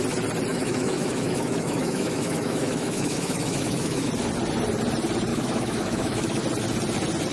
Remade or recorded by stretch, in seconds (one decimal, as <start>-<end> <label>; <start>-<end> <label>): 0.0-0.5 recorded; 0.5-4.1 remade; 4.1-5.3 recorded; 5.3-6.4 remade; 6.4-7.3 recorded

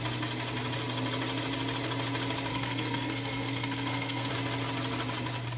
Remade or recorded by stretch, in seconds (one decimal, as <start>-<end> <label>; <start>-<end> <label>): 0.0-2.5 recorded; 2.5-4.3 remade; 4.3-5.6 recorded

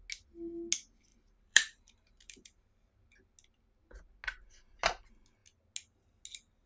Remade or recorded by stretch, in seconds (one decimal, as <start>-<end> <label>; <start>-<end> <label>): 0.0-1.1 recorded; 1.1-2.9 remade; 2.9-6.7 recorded

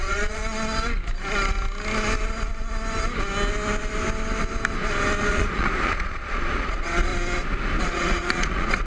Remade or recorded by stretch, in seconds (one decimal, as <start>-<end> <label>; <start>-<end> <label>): 0.0-0.4 remade; 0.4-5.2 recorded; 5.2-7.1 remade; 7.1-7.8 recorded; 7.8-8.9 remade

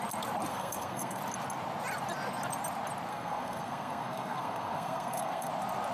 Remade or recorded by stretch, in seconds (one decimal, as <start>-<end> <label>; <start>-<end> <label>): 0.0-0.5 recorded; 0.5-1.2 remade; 1.2-3.1 recorded; 3.1-5.5 remade; 5.5-5.9 recorded

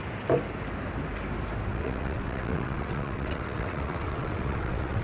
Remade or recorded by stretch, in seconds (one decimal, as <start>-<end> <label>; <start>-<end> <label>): 0.0-1.7 recorded; 1.7-5.0 remade

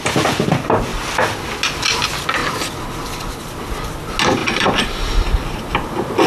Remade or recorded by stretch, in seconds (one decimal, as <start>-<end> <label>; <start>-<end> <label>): 0.0-0.9 recorded; 0.9-1.4 remade; 1.4-4.4 recorded; 4.4-5.7 remade; 5.7-6.3 recorded